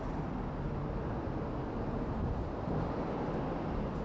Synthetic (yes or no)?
no